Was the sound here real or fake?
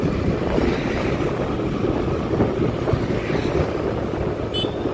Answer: real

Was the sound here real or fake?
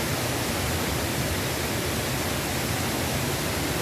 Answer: real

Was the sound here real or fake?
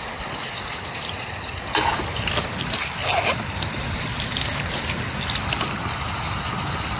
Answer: real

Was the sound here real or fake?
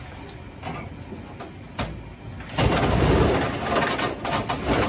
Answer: real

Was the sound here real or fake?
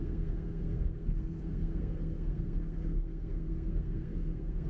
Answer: fake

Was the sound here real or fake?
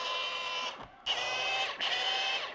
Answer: real